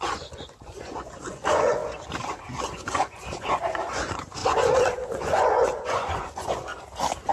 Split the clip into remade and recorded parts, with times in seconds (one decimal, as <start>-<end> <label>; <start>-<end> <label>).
0.0-1.8 remade; 1.8-2.6 recorded; 2.6-6.7 remade; 6.7-7.3 recorded